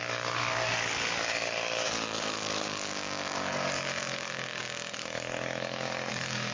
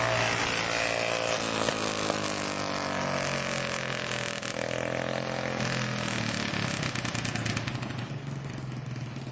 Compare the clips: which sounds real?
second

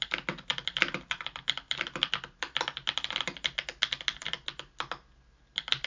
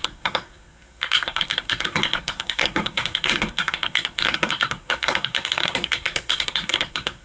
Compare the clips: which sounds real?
first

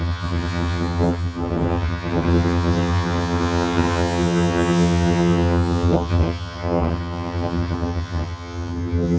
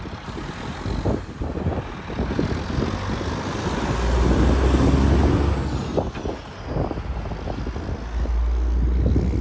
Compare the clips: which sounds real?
second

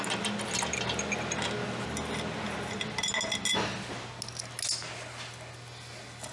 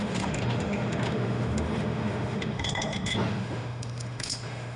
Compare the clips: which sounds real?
first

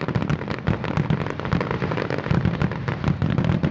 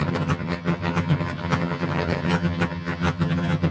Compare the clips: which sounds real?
first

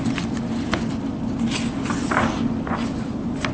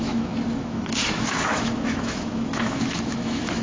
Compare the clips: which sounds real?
first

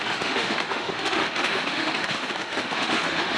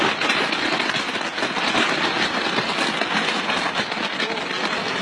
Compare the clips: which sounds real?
second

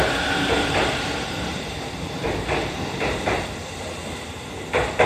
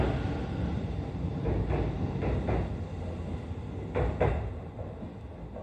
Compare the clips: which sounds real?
second